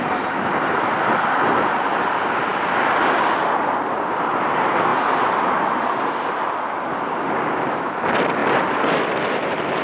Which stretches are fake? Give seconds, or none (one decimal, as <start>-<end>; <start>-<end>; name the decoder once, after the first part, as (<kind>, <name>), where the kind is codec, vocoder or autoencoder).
none